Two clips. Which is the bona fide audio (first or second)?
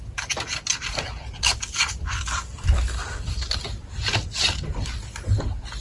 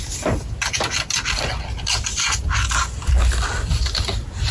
second